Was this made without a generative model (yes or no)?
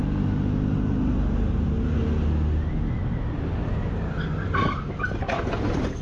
yes